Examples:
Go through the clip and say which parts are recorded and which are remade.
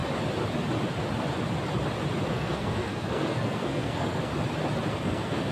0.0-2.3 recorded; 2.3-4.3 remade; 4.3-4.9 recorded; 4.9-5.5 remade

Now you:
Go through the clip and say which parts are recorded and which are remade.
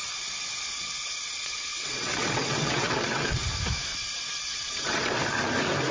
0.0-3.5 remade; 3.5-3.9 recorded; 3.9-5.2 remade; 5.2-5.9 recorded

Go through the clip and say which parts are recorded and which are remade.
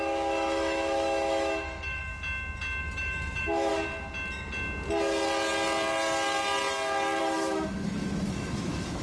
0.0-2.1 remade; 2.1-2.8 recorded; 2.8-3.7 remade; 3.7-7.2 recorded; 7.2-9.0 remade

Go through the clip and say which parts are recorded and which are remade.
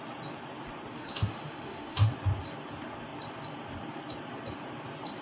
0.0-0.9 recorded; 0.9-2.1 remade; 2.1-5.2 recorded